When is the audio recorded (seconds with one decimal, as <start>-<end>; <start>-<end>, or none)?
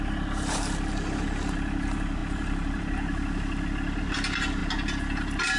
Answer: 0.0-5.6